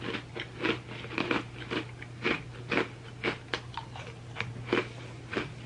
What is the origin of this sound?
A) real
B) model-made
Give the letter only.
A